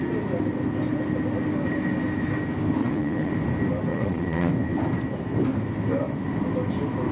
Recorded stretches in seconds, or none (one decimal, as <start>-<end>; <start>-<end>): 0.0-2.8; 3.3-3.9; 4.5-7.1